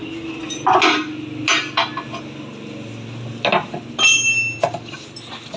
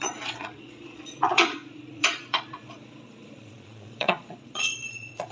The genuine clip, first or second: first